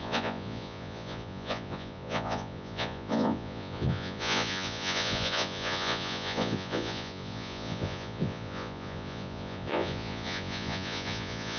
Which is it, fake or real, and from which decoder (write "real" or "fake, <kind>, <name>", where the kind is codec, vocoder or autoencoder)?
fake, vocoder, Vocos